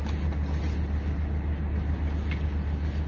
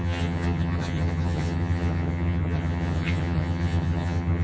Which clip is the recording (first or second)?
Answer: first